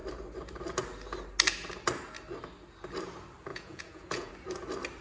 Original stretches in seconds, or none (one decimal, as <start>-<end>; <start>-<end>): 0.0-3.5; 4.3-5.0